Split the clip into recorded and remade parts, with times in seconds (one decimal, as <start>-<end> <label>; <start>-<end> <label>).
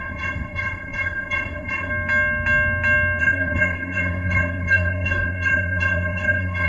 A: 0.0-1.9 remade; 1.9-3.2 recorded; 3.2-6.7 remade